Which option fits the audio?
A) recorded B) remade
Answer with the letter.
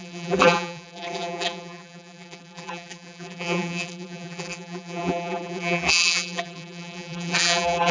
B